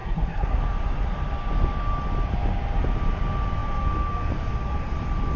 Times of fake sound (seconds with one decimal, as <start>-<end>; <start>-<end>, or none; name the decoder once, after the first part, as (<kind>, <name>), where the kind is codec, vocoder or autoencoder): 0.0-0.6 (codec, SNAC)